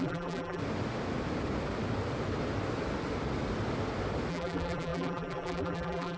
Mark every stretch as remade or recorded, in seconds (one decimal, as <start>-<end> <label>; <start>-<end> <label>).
0.0-0.6 remade; 0.6-4.3 recorded; 4.3-6.2 remade